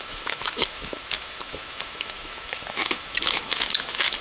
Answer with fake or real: fake